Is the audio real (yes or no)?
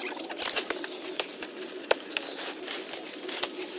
yes